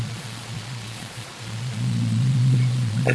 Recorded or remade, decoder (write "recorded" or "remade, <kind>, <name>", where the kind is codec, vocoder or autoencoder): remade, vocoder, Vocos